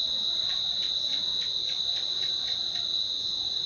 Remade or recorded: recorded